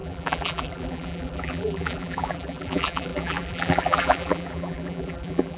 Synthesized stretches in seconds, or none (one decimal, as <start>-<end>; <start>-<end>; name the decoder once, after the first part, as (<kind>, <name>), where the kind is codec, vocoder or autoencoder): 0.0-5.6 (vocoder, BigVGAN v2)